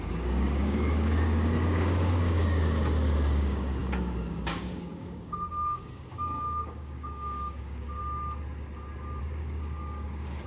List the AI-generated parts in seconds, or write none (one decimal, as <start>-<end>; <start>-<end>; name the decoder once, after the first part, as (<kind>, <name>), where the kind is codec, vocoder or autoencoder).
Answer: 0.0-8.0 (codec, DAC); 9.2-10.5